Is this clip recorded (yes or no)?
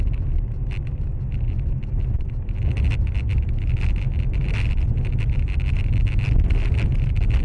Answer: yes